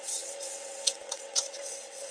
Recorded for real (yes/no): no